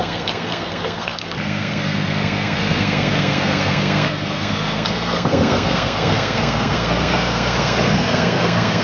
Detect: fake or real fake